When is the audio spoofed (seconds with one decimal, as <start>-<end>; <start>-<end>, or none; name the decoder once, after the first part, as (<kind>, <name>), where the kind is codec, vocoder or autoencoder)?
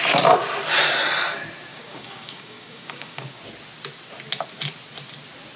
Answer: 1.7-3.4 (codec, DAC)